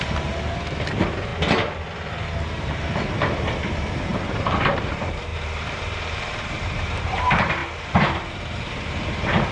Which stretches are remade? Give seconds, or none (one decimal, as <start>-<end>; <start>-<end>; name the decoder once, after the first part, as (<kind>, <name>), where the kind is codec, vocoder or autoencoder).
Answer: 0.0-1.3 (vocoder, BigVGAN v2); 2.1-9.5